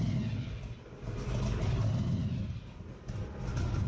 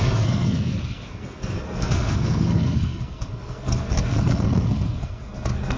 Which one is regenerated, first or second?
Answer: second